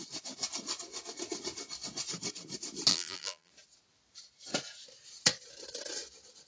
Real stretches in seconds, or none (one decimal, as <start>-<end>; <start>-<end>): 0.0-2.9; 3.5-6.5